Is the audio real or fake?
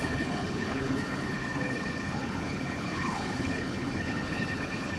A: fake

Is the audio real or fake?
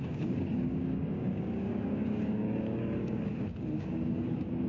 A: fake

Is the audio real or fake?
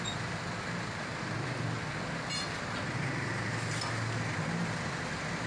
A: real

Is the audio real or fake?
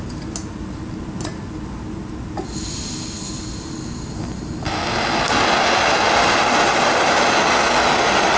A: real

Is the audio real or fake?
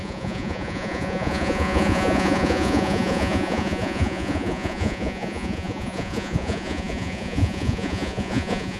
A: fake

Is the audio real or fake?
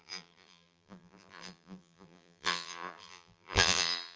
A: fake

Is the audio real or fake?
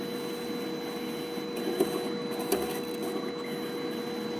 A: real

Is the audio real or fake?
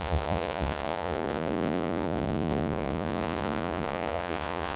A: fake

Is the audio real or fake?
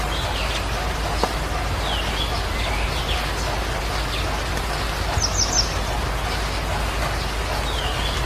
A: real